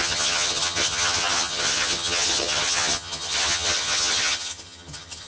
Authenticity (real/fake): fake